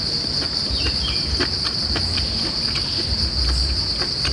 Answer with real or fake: real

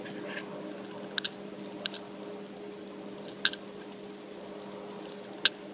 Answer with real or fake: real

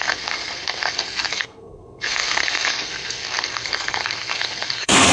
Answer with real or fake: fake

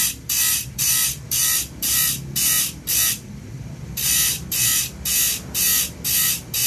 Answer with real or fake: fake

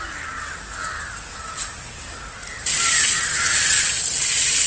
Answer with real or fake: real